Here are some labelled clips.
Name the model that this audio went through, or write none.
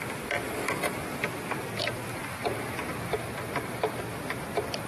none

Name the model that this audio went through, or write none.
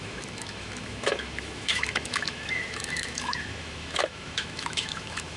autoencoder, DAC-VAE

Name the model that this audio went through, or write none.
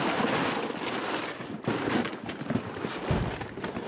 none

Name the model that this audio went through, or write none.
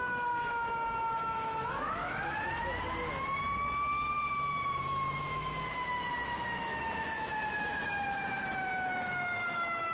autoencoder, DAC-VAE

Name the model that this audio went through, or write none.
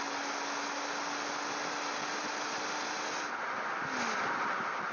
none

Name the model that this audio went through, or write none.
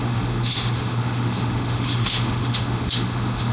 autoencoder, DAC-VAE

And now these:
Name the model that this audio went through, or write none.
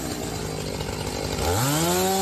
none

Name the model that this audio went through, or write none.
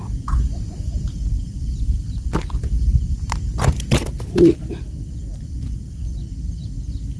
none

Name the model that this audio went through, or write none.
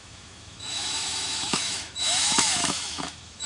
autoencoder, DAC-VAE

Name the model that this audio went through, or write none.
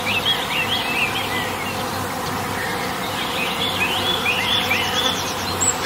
none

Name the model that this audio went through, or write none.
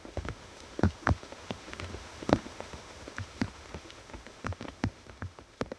autoencoder, DAC-VAE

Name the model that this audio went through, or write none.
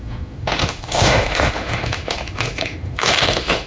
autoencoder, DAC-VAE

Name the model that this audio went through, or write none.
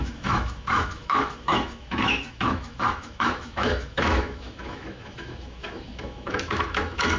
autoencoder, DAC-VAE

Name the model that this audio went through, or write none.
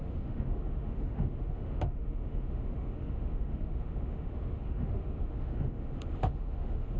autoencoder, DAC-VAE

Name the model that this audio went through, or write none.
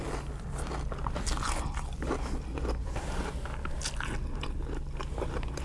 none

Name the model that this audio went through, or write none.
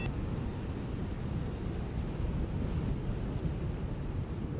none